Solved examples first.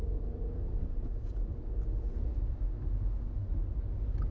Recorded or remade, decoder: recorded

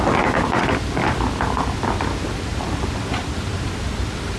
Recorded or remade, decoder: recorded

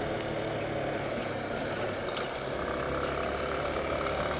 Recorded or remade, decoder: recorded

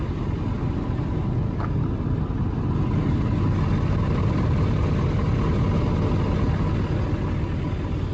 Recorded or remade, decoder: recorded